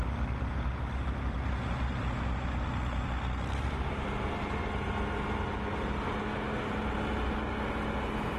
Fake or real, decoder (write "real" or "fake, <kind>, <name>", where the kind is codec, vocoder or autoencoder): real